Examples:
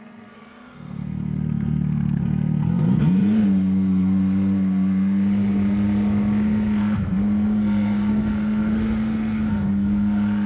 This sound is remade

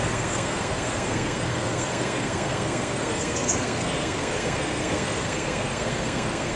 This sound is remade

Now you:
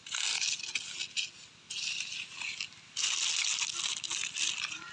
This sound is recorded